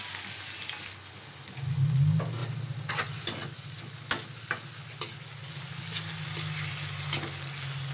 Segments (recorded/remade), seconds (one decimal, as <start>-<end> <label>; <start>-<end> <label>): 0.0-7.9 recorded